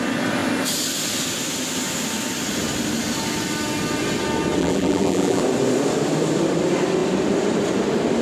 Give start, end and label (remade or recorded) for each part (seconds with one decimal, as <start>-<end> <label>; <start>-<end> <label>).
0.0-4.6 recorded; 4.6-5.4 remade; 5.4-8.2 recorded